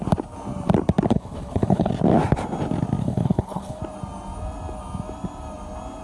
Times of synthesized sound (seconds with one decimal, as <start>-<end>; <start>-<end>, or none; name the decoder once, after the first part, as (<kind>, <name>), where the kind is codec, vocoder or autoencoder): 1.1-1.9 (codec, HILCodec); 3.0-3.8